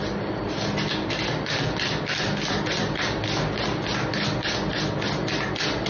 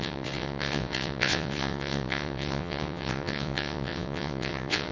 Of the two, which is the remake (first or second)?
second